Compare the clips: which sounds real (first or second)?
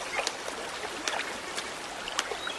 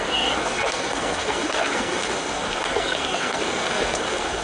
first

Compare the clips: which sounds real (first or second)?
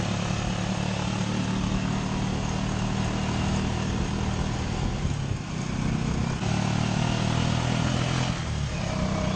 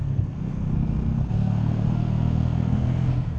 first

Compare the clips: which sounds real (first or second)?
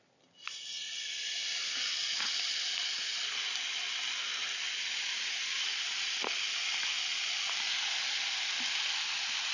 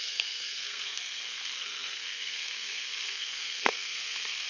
first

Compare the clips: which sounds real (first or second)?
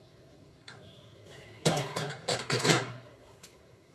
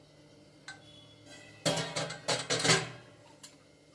second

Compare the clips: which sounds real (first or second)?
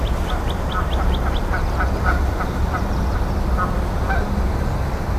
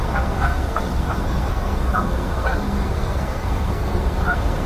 first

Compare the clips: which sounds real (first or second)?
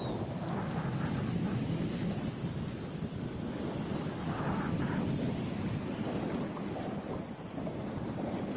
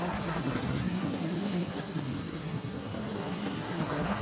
first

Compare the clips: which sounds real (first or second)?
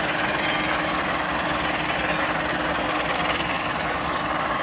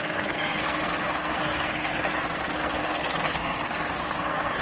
first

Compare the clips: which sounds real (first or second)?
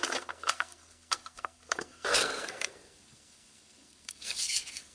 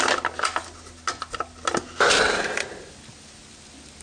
second